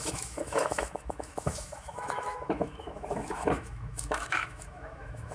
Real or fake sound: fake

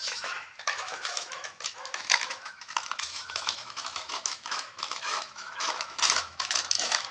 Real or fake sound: fake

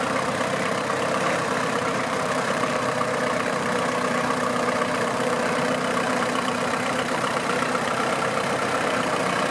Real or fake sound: fake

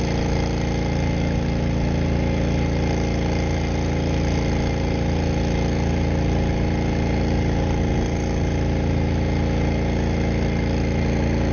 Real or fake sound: real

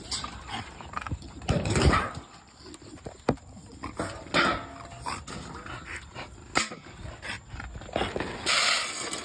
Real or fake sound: real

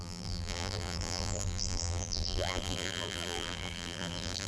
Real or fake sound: fake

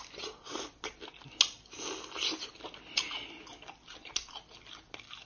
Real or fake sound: real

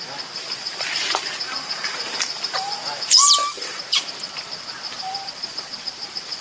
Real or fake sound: fake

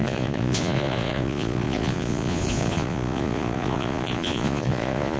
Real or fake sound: fake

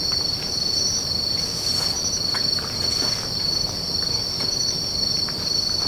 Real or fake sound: real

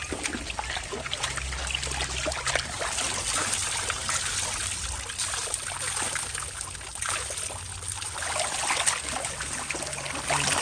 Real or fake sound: real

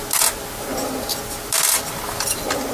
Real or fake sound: real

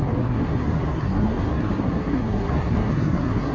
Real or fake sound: fake